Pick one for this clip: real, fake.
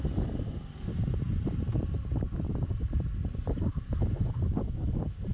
fake